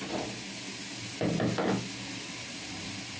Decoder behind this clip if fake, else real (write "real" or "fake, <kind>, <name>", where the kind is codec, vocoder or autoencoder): real